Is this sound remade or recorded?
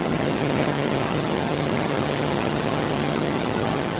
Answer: remade